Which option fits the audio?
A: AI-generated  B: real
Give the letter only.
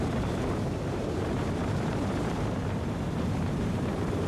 A